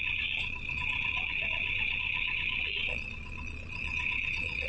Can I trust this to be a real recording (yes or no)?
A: no